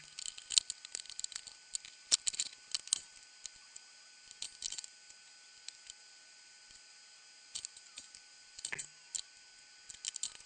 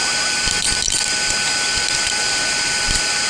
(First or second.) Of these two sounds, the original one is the first